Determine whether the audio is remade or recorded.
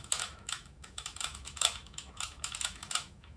remade